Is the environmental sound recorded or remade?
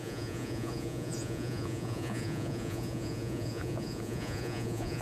remade